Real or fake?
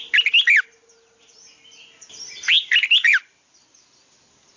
real